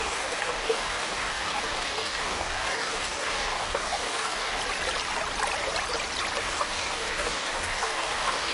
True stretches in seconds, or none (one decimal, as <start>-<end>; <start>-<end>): 4.6-6.4